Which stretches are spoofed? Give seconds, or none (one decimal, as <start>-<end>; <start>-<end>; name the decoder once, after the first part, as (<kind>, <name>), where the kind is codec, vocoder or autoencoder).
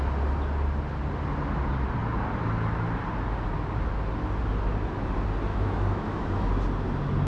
5.5-6.5 (autoencoder, DAC-VAE)